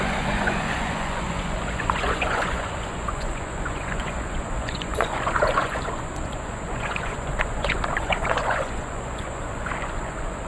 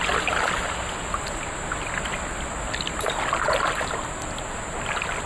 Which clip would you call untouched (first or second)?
second